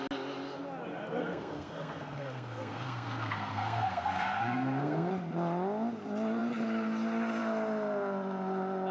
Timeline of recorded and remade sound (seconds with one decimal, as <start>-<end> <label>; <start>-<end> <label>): 0.0-1.2 recorded; 1.2-5.1 remade; 5.1-8.9 recorded